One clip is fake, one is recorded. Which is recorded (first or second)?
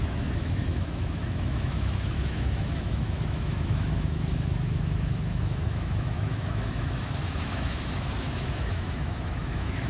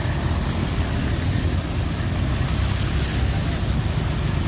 second